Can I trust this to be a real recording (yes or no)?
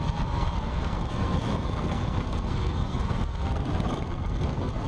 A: no